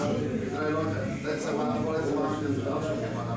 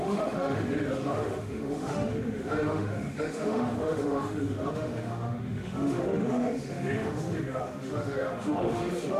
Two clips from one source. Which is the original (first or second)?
first